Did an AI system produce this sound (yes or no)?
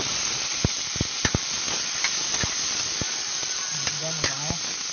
no